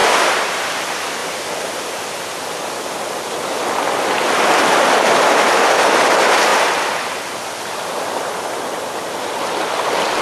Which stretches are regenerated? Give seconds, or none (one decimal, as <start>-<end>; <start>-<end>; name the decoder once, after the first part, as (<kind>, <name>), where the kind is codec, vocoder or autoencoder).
none